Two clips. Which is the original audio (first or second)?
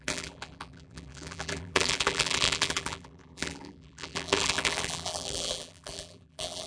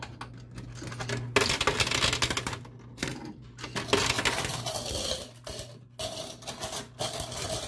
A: second